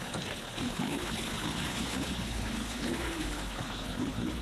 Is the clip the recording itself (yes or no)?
no